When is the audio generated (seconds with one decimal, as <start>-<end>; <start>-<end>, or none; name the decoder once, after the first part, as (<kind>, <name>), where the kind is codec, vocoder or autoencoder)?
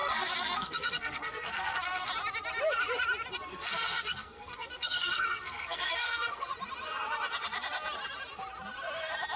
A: 0.0-2.1 (codec, SNAC); 3.5-6.5